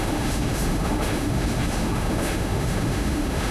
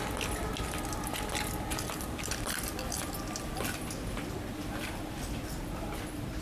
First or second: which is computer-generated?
first